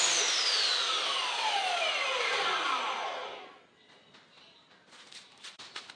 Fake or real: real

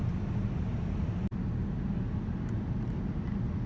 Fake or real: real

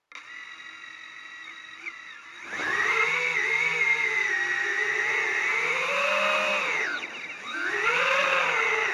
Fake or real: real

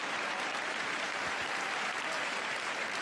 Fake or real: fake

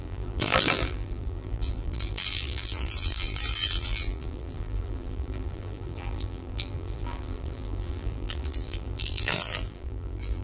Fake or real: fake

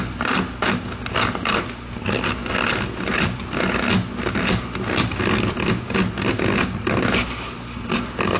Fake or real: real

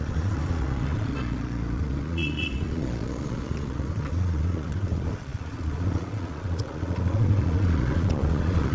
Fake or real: fake